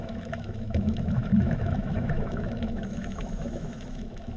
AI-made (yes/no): yes